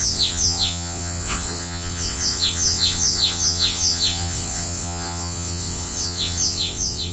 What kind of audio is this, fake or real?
fake